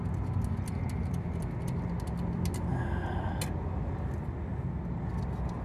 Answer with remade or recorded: recorded